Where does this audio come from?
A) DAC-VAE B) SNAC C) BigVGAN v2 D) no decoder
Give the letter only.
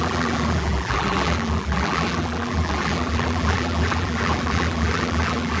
C